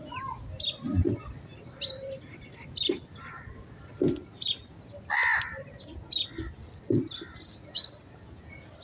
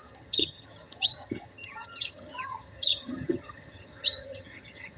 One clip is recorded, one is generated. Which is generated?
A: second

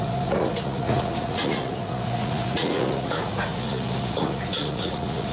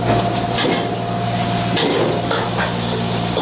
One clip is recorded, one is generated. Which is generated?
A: first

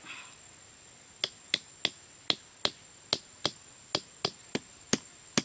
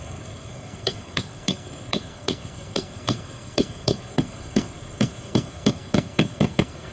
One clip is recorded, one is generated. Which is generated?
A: second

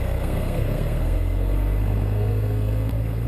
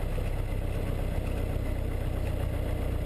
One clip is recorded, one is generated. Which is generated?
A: first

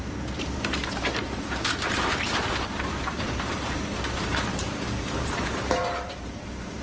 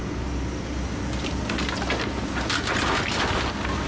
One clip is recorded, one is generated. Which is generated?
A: first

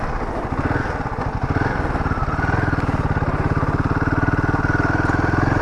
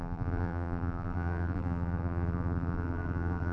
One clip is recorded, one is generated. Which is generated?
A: second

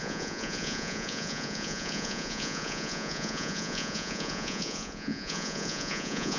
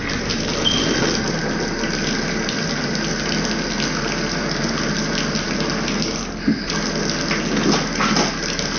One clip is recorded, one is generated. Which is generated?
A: first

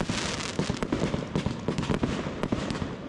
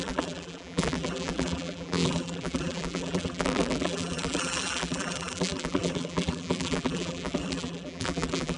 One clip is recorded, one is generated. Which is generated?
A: second